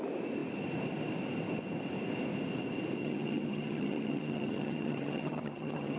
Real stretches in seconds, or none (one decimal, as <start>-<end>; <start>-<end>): 0.0-3.0